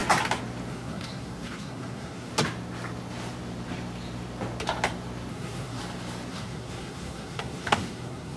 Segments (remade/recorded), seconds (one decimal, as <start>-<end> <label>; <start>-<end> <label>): 0.0-0.7 recorded; 0.7-2.3 remade; 2.3-5.3 recorded; 5.3-5.8 remade; 5.8-6.3 recorded; 6.3-8.4 remade